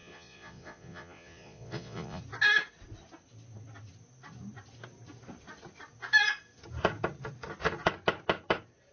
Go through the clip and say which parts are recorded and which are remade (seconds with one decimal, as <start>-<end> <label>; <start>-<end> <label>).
0.0-2.2 remade; 2.2-8.9 recorded